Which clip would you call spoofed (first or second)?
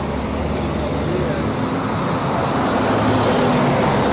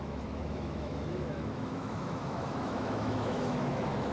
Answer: second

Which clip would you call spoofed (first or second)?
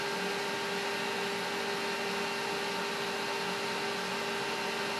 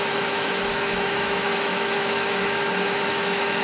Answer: second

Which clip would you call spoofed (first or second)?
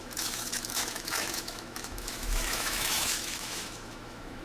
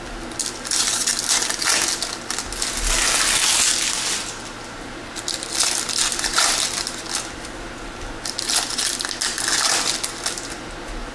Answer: first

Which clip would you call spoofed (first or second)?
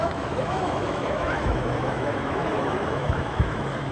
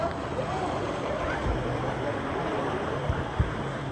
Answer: first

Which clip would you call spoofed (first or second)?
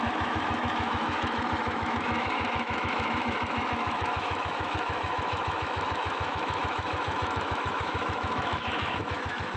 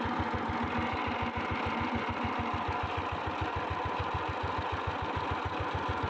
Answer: first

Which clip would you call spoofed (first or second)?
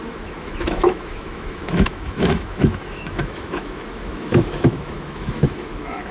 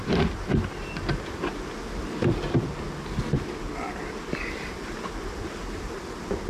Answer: first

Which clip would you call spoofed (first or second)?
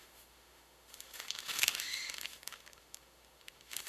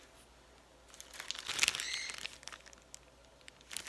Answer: first